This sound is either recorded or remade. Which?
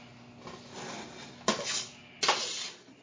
recorded